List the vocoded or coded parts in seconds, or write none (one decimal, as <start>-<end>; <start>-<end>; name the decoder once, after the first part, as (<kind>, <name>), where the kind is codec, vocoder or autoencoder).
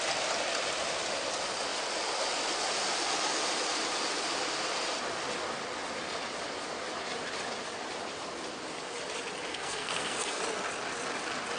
9.5-10.4 (codec, SNAC)